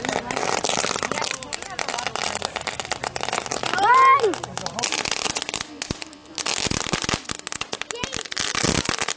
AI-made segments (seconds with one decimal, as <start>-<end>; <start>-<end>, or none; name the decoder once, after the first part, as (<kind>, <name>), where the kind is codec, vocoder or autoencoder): none